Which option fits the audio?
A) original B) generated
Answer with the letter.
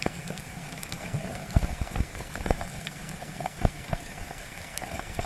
B